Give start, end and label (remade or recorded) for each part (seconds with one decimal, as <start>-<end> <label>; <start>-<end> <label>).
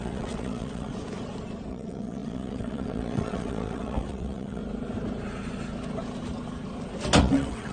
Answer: 0.0-0.9 remade; 0.9-1.7 recorded; 1.7-4.6 remade; 4.6-7.2 recorded; 7.2-7.7 remade